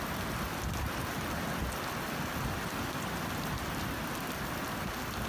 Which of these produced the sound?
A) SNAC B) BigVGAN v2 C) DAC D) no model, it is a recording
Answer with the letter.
D